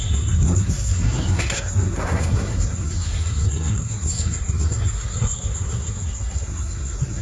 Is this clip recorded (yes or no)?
no